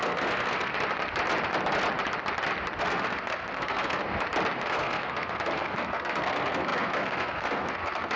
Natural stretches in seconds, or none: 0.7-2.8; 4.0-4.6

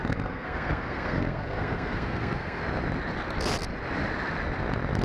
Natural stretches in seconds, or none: 2.6-5.0

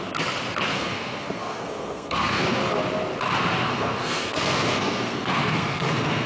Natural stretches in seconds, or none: 0.0-0.7; 2.6-3.7